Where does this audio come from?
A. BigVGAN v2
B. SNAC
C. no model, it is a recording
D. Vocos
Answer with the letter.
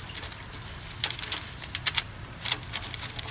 C